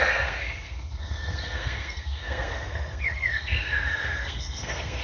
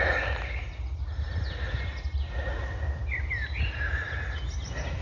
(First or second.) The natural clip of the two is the second